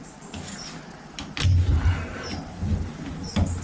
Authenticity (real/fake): real